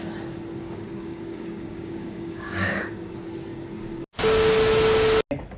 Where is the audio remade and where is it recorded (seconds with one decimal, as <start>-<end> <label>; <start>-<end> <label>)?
0.0-0.6 recorded; 0.6-2.9 remade; 2.9-5.6 recorded